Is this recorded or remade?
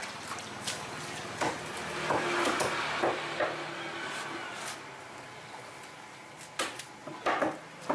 recorded